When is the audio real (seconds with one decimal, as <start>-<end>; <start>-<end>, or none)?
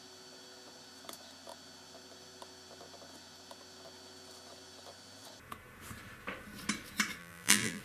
0.0-7.2